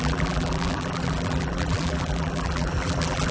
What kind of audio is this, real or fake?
fake